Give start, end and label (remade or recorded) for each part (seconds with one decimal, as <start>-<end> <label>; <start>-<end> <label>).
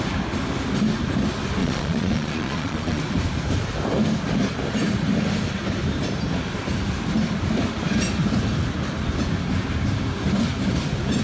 0.0-1.6 recorded; 1.6-3.0 remade; 3.0-11.2 recorded